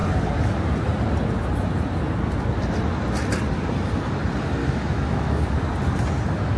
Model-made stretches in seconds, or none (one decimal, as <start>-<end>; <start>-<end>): 4.6-5.6